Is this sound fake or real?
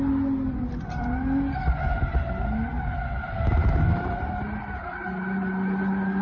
real